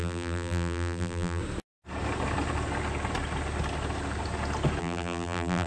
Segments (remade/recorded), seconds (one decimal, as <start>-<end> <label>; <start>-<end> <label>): 0.0-1.4 remade; 1.4-4.8 recorded; 4.8-5.7 remade